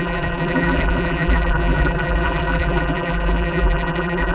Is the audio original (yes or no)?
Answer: no